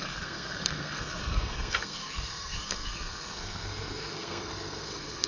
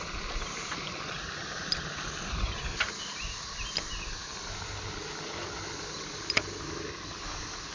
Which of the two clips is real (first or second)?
second